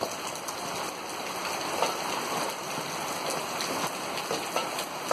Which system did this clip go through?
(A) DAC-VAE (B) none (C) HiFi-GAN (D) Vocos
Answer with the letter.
B